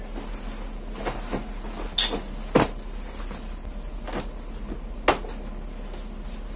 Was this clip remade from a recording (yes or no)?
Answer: no